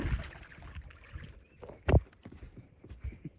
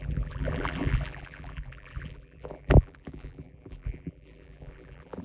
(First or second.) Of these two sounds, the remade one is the second